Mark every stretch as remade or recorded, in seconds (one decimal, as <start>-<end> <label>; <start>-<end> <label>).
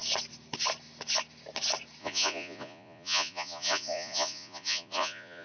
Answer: 0.0-2.0 recorded; 2.0-5.4 remade